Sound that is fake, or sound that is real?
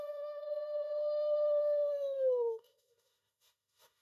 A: fake